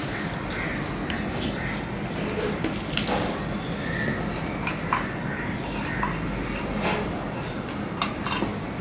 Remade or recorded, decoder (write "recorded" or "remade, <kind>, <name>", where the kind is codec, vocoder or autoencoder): recorded